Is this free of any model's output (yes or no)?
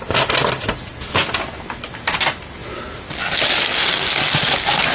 yes